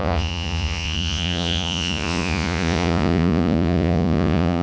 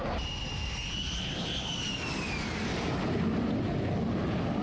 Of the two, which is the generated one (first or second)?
first